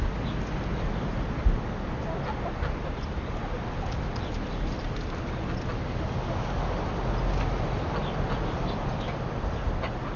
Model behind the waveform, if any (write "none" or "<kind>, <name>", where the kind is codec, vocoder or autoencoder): none